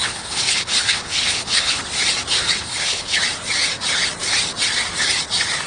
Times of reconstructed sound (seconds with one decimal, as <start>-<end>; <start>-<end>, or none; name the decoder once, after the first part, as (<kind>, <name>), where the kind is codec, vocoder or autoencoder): 0.0-1.8 (codec, HILCodec); 2.4-3.2